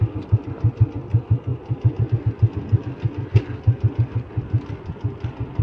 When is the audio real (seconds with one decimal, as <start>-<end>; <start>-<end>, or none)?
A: 0.0-5.6